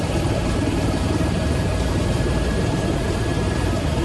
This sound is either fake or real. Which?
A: fake